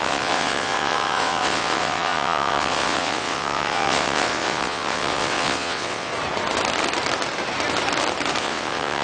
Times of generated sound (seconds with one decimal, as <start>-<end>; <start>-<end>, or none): 0.0-6.1; 8.4-9.0